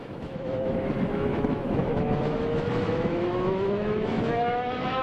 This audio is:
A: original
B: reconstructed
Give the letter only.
B